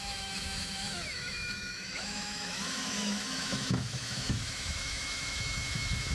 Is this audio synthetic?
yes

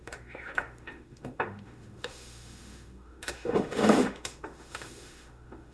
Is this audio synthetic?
yes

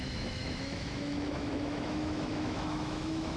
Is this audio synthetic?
yes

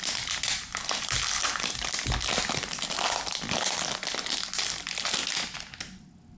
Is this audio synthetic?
no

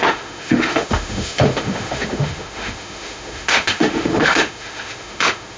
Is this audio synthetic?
yes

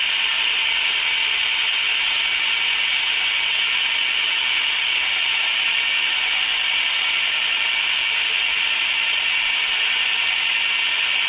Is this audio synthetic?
no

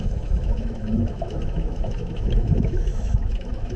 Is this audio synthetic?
yes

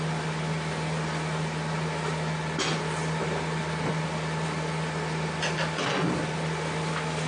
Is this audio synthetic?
no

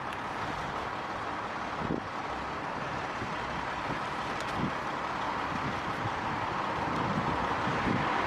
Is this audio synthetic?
no